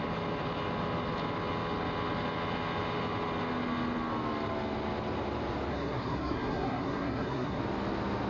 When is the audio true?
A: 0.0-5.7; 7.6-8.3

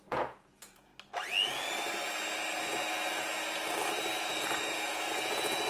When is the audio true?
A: 0.9-4.3

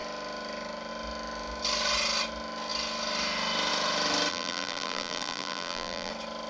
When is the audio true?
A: 0.0-4.3; 6.1-6.5

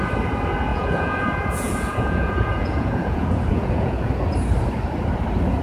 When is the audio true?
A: 0.0-0.7; 4.1-5.6

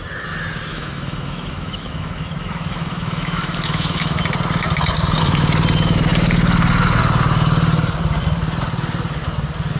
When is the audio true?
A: 0.0-0.7; 4.2-9.8

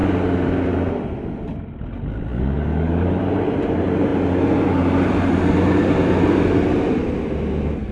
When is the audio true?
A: 0.0-2.3; 3.2-7.9

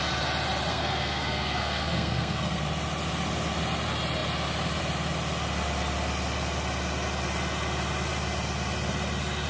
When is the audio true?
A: 0.0-0.7; 2.6-9.5